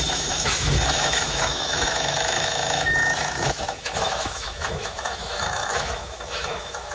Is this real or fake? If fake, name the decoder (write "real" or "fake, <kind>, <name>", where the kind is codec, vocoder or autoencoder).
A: fake, autoencoder, DAC-VAE